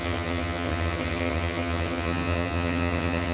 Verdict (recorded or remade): remade